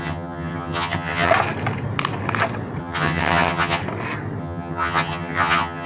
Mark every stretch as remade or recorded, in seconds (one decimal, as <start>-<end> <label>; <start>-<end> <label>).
0.0-1.3 remade; 1.3-2.8 recorded; 2.8-3.8 remade; 3.8-4.4 recorded; 4.4-5.9 remade